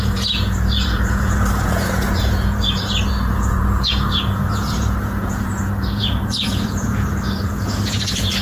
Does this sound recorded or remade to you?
remade